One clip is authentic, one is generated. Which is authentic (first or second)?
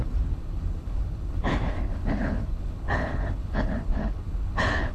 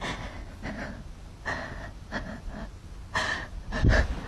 second